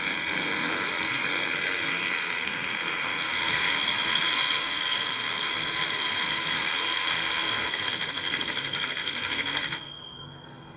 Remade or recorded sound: remade